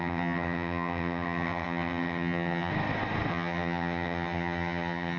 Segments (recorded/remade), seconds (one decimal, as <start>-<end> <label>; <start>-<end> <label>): 0.0-2.7 remade; 2.7-3.3 recorded; 3.3-5.2 remade